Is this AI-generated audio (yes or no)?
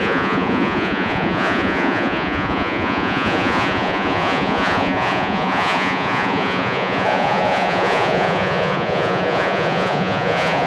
yes